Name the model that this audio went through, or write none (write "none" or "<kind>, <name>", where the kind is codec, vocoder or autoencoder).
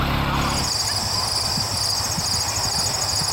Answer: none